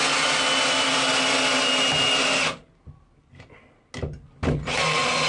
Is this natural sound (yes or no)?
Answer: yes